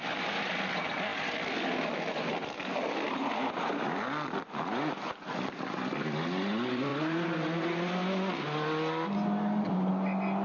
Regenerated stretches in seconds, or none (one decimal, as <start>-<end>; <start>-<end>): 1.1-1.7